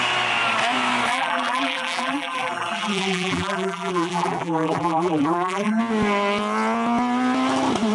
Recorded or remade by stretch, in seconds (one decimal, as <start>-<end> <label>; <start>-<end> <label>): 0.0-1.1 recorded; 1.1-5.8 remade; 5.8-7.9 recorded